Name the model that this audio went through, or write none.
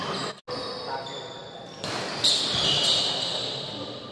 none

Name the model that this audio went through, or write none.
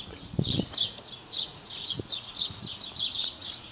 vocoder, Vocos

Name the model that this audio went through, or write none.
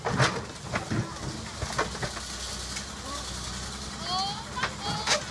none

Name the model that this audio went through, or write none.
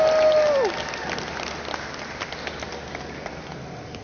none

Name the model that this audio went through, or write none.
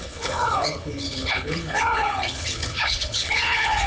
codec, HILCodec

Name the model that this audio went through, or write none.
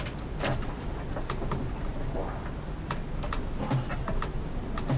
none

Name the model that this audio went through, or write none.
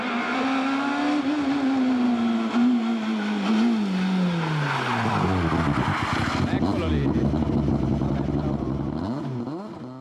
none